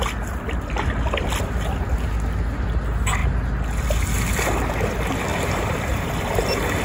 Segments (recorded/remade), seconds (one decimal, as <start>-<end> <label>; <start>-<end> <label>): 0.0-5.3 recorded; 5.3-6.2 remade; 6.2-6.8 recorded